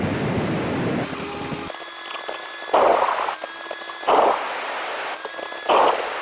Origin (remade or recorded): recorded